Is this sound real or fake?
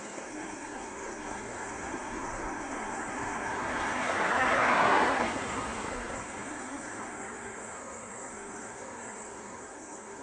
fake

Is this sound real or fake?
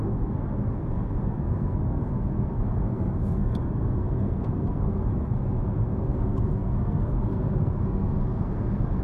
fake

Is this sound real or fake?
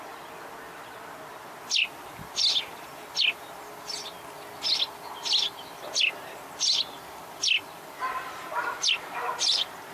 real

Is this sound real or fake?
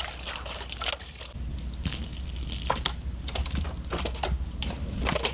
real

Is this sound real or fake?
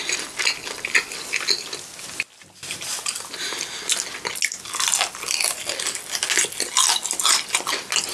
real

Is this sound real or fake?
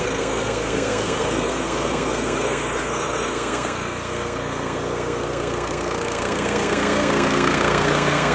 fake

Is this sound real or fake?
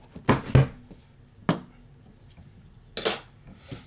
real